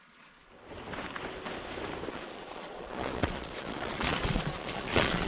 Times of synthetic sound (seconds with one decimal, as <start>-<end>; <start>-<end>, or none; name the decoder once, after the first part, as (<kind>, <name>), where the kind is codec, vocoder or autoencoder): 0.0-0.4 (vocoder, Vocos); 2.1-5.3